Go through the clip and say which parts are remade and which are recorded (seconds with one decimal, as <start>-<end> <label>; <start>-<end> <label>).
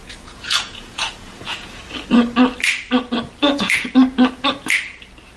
0.0-1.8 remade; 1.8-3.4 recorded; 3.4-3.9 remade; 3.9-5.4 recorded